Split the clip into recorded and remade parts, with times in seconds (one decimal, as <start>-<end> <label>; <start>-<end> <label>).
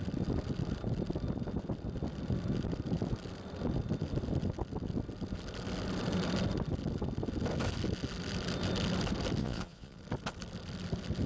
0.0-9.4 recorded; 9.4-10.0 remade; 10.0-11.3 recorded